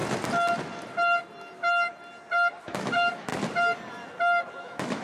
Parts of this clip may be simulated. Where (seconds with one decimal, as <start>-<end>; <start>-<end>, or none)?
2.6-3.3; 4.6-5.0